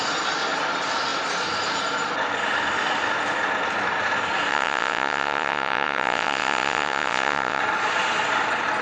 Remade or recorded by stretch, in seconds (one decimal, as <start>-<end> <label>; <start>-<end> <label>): 0.0-4.5 recorded; 4.5-7.6 remade; 7.6-8.8 recorded